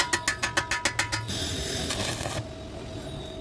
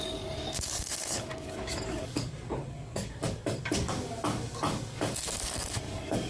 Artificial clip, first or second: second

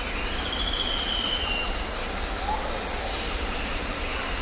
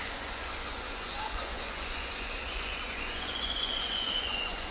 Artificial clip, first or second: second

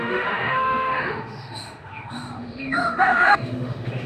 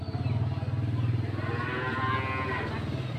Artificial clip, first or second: first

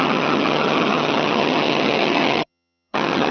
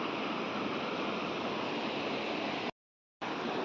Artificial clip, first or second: first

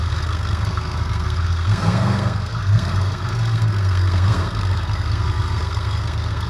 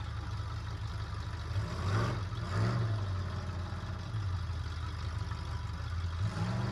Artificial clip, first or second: first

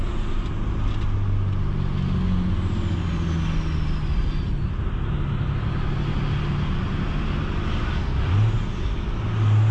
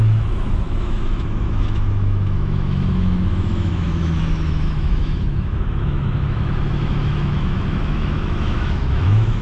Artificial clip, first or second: second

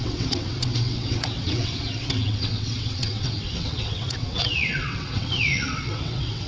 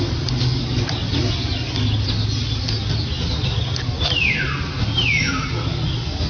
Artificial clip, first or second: first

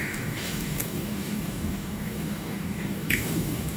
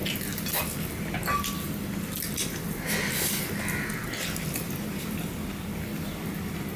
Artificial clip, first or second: first